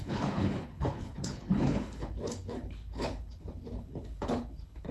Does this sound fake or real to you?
fake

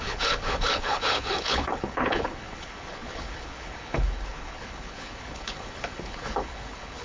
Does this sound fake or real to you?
fake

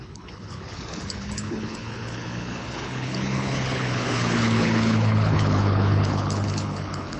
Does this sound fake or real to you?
fake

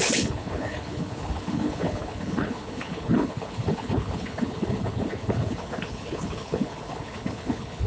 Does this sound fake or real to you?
fake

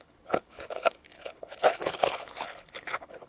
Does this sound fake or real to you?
fake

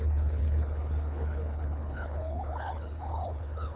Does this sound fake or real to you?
fake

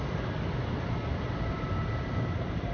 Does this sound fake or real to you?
real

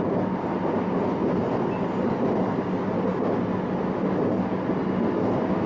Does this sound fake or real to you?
real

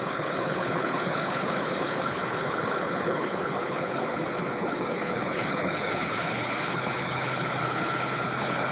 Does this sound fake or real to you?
fake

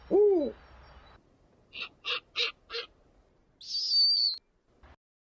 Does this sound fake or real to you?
real